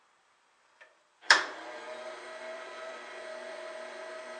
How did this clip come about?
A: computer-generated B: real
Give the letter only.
A